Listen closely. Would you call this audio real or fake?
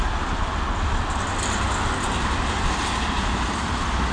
real